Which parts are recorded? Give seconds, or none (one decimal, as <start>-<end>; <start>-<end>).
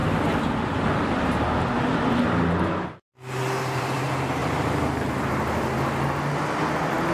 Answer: 0.0-7.1